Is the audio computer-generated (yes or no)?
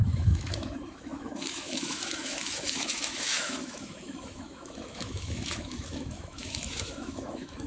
yes